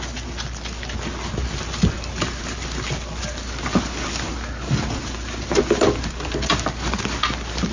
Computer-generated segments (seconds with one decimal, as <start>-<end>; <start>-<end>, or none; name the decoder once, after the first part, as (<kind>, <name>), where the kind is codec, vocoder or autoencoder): none